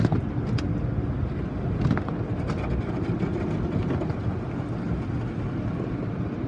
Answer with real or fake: real